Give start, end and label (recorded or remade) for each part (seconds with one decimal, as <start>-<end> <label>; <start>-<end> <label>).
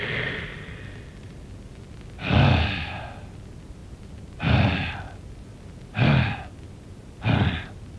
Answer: 0.0-8.0 recorded